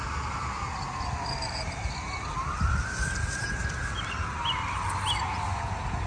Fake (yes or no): no